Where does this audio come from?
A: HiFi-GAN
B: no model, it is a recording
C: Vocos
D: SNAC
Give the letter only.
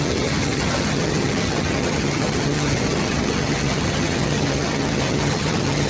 A